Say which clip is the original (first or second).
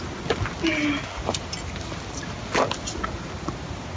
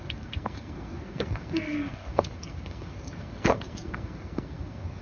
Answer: first